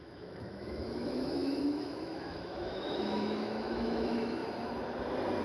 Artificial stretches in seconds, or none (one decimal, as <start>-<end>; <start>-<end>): 0.0-4.4